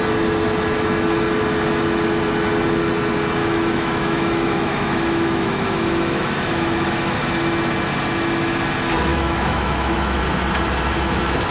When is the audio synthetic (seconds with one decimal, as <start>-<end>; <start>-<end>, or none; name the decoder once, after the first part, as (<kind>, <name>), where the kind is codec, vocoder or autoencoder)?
3.4-7.2 (autoencoder, DAC-VAE); 9.1-10.2